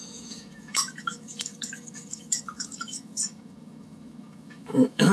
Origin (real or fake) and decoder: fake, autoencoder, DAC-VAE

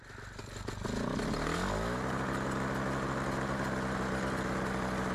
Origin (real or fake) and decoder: real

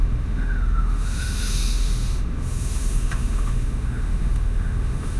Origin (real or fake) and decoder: fake, autoencoder, DAC-VAE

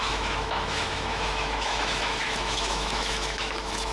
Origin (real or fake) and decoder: fake, autoencoder, DAC-VAE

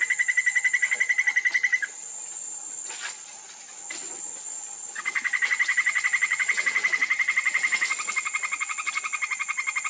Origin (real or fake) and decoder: real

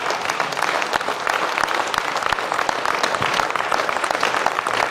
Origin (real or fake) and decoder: real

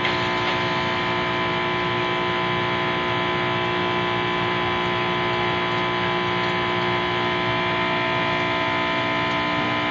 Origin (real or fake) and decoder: real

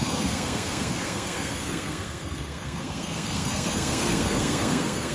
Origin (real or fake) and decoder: fake, codec, SNAC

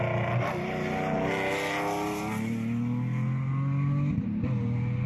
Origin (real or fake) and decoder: real